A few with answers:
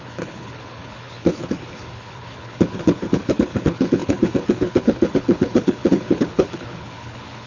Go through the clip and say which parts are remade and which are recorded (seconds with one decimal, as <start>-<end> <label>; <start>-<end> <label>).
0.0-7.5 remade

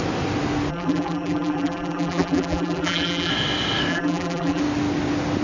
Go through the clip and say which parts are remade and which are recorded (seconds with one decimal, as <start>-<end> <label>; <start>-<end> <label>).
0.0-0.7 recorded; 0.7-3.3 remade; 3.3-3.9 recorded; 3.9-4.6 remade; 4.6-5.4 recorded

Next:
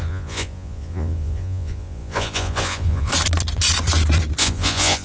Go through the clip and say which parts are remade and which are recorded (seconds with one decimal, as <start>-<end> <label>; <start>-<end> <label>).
0.0-3.1 remade; 3.1-4.4 recorded; 4.4-5.0 remade

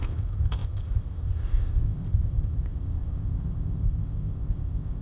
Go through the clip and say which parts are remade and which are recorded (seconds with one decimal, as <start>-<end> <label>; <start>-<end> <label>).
0.0-5.0 remade

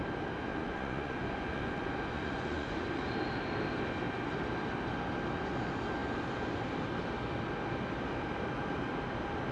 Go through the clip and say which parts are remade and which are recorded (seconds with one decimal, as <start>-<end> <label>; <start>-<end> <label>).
0.0-0.5 recorded; 0.5-3.1 remade; 3.1-9.5 recorded

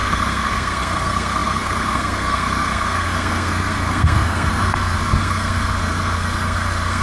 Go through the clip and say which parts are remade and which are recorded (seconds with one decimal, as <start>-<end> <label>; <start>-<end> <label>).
0.0-7.0 remade

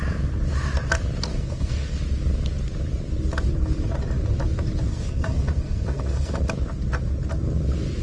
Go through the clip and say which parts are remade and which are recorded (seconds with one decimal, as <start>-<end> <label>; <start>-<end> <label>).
0.0-1.3 recorded; 1.3-2.0 remade; 2.0-4.9 recorded; 4.9-6.4 remade; 6.4-8.0 recorded

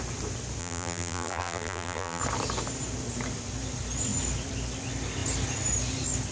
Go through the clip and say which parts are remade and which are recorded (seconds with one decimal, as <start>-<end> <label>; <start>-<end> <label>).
0.0-0.6 recorded; 0.6-2.2 remade; 2.2-6.3 recorded